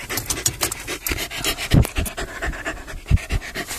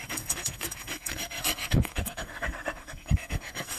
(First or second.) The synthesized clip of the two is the second